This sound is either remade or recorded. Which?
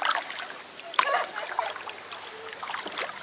recorded